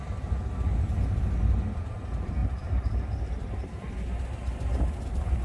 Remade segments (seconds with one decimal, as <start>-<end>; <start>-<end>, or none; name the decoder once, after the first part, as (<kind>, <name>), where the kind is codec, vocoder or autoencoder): 2.4-3.8 (vocoder, BigVGAN v2)